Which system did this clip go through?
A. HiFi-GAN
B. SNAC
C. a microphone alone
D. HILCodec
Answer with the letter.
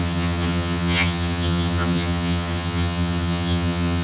A